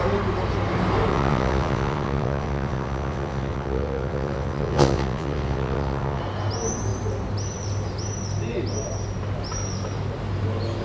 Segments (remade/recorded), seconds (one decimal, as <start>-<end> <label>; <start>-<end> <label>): 0.0-1.1 recorded; 1.1-6.2 remade; 6.2-10.8 recorded